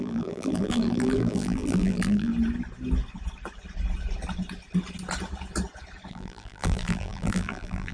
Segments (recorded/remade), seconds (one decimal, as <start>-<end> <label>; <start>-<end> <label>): 0.0-2.3 remade; 2.3-6.1 recorded; 6.1-7.9 remade